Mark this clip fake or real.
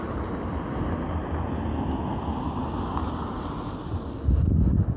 real